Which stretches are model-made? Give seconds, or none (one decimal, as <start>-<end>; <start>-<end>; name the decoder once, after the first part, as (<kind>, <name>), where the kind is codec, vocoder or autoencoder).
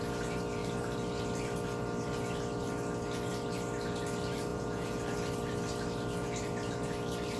4.5-5.0 (vocoder, Vocos)